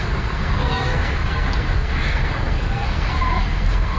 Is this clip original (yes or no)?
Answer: no